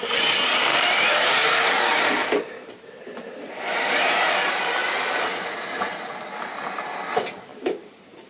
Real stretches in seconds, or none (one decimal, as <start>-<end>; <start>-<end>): 0.0-0.7; 1.7-2.2; 4.6-7.5